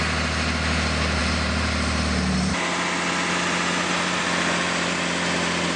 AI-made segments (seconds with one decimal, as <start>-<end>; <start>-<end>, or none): 1.2-2.5